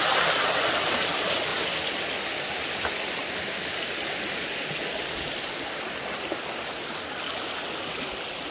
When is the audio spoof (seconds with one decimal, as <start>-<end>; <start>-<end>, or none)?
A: none